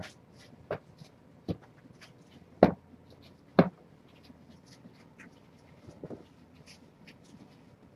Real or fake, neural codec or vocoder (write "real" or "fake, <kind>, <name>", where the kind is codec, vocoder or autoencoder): real